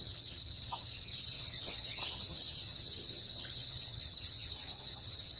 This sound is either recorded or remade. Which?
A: remade